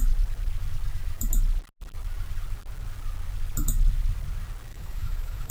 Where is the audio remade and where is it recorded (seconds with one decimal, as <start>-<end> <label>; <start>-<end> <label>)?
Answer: 0.0-4.7 recorded; 4.7-5.5 remade